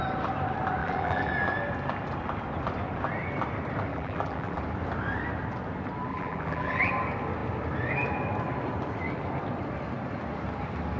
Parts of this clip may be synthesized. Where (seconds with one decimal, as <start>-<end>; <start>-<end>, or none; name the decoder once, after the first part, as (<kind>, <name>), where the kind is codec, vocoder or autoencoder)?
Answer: 0.8-1.3 (vocoder, BigVGAN v2); 3.9-4.6; 6.1-6.9